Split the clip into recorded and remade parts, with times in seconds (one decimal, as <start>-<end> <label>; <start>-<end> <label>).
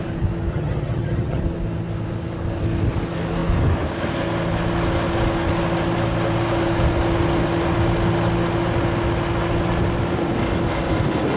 0.0-0.5 recorded; 0.5-1.4 remade; 1.4-11.4 recorded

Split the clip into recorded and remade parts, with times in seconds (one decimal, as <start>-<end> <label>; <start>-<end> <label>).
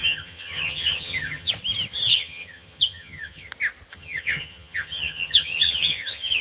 0.0-1.5 remade; 1.5-2.1 recorded; 2.1-3.5 remade; 3.5-3.9 recorded; 3.9-6.4 remade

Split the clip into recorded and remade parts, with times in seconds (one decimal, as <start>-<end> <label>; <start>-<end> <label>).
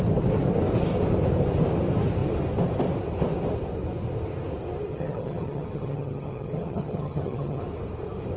0.0-4.9 recorded; 4.9-7.6 remade; 7.6-8.4 recorded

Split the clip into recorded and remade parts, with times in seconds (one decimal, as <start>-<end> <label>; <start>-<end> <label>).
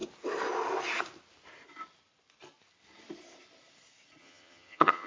0.0-4.2 recorded; 4.2-5.1 remade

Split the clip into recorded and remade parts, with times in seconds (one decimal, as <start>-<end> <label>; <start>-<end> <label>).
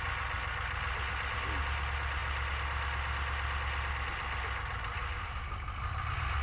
0.0-6.4 recorded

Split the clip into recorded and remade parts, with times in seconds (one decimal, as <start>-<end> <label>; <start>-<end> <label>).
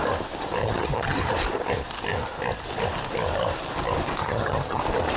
0.0-0.6 recorded; 0.6-1.3 remade; 1.3-4.2 recorded; 4.2-4.8 remade; 4.8-5.2 recorded